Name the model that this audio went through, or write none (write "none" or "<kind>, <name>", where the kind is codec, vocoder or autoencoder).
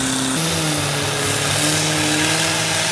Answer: none